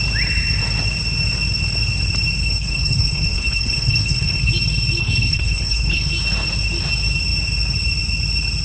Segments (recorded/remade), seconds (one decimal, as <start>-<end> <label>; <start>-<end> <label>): 0.0-2.4 recorded; 2.4-4.5 remade; 4.5-5.0 recorded; 5.0-6.1 remade; 6.1-8.6 recorded